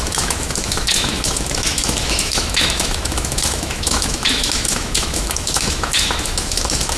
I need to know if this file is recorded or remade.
remade